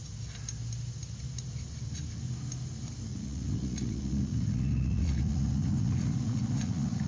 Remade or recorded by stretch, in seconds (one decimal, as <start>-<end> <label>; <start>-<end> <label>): 0.0-3.1 recorded; 3.1-7.1 remade